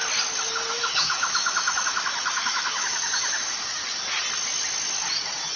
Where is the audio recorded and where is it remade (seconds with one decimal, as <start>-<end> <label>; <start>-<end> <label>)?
0.0-0.7 recorded; 0.7-3.8 remade; 3.8-5.6 recorded